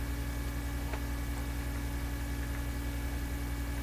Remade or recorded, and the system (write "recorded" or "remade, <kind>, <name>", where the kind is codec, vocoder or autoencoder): recorded